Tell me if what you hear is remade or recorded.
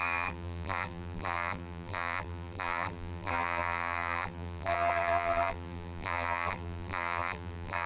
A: remade